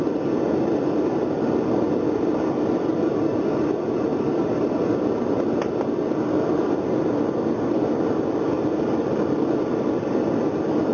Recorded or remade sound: recorded